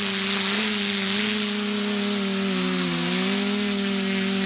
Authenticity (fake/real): real